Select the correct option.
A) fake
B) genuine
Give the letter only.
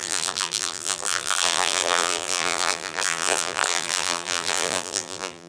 A